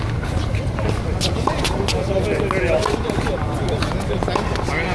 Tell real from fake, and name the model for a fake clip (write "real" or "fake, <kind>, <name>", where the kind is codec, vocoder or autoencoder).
real